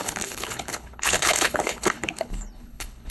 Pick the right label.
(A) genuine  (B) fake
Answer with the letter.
B